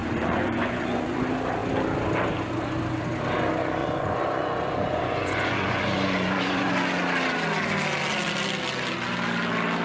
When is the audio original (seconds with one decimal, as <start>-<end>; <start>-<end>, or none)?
1.2-3.8; 6.7-9.8